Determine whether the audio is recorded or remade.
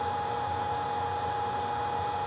recorded